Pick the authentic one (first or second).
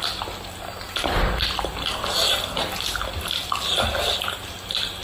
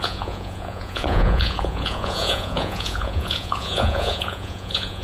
first